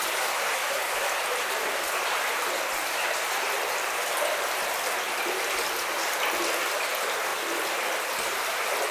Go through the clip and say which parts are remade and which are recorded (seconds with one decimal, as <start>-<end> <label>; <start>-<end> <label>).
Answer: 0.0-7.3 remade; 7.3-8.9 recorded